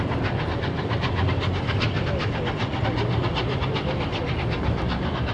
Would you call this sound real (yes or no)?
yes